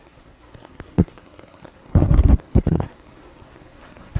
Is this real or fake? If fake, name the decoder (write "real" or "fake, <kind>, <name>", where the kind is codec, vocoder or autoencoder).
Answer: fake, codec, SNAC